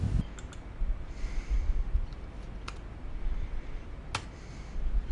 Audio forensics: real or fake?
real